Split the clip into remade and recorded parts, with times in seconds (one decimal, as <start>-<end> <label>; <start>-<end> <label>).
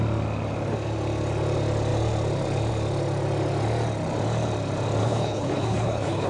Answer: 0.0-5.0 recorded; 5.0-6.3 remade